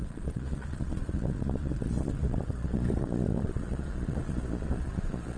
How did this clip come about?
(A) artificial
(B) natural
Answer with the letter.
A